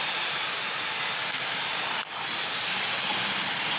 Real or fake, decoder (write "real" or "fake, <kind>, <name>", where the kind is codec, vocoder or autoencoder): real